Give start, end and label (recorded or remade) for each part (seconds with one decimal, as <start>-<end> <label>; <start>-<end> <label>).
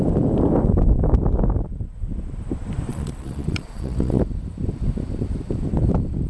0.0-2.9 recorded; 2.9-4.2 remade; 4.2-6.3 recorded